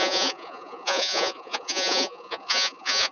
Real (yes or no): no